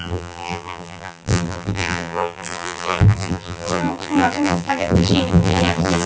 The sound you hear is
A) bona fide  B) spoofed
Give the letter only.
B